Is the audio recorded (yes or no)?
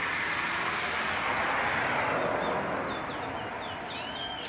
yes